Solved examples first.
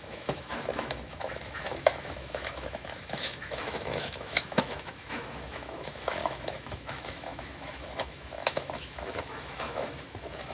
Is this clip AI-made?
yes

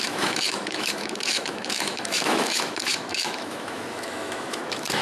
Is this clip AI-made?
yes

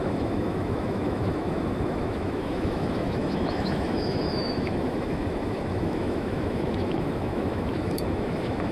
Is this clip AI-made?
yes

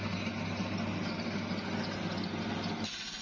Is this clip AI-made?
no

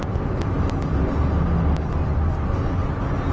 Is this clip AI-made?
no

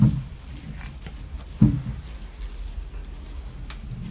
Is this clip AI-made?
no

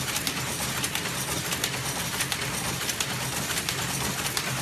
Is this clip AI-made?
no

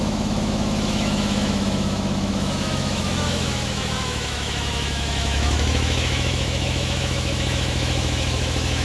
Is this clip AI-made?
yes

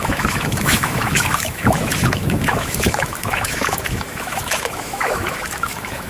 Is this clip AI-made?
yes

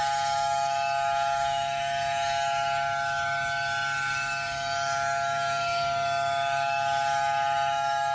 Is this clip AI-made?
yes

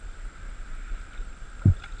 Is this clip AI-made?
no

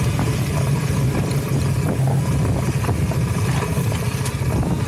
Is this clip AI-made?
no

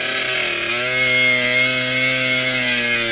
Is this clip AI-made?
no